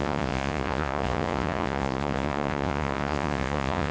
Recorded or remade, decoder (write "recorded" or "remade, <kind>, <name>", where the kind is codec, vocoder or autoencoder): remade, vocoder, Vocos